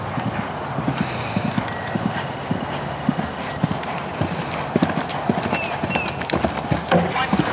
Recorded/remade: recorded